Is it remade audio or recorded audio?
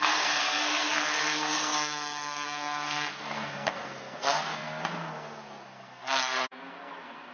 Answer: remade